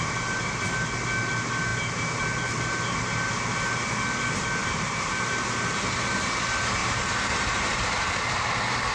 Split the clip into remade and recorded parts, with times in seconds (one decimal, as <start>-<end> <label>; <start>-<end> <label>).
0.0-4.6 recorded; 4.6-5.1 remade; 5.1-6.8 recorded; 6.8-7.8 remade; 7.8-8.9 recorded